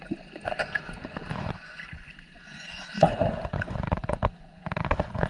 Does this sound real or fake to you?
fake